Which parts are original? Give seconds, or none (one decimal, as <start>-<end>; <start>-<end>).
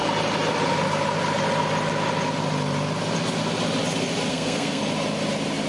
0.0-4.3; 4.8-5.7